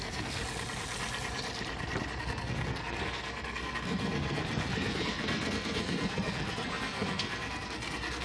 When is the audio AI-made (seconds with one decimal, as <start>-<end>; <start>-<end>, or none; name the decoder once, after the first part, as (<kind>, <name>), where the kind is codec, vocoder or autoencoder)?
0.0-0.4 (codec, SNAC); 2.2-8.2